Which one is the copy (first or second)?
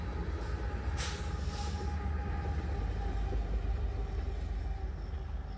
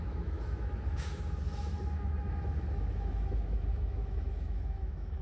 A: second